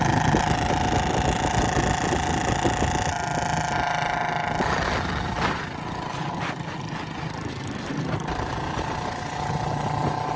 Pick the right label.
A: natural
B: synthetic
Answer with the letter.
A